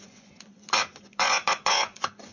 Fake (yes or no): yes